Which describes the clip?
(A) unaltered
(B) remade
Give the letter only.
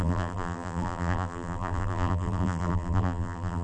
B